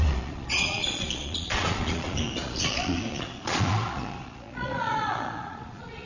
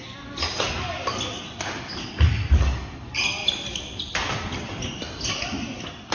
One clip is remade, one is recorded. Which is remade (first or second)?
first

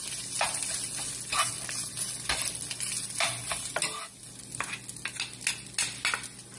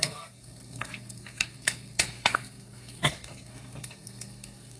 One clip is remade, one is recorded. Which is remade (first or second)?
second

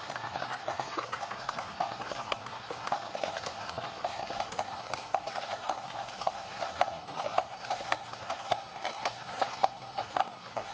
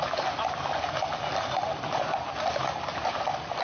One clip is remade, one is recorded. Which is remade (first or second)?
first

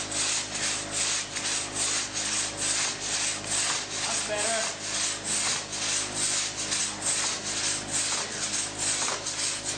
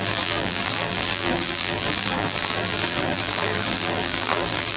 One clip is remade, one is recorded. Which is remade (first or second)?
second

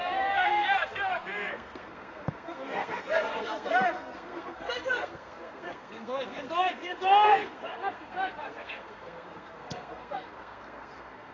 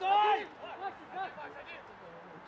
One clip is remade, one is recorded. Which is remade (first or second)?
first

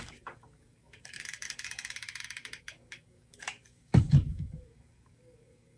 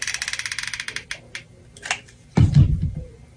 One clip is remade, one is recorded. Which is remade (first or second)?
first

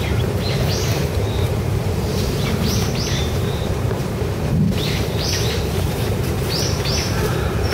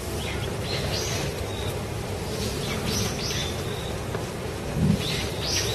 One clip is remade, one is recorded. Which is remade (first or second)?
first